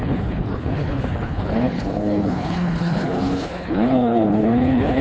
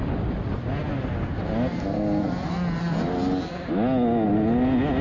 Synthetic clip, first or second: first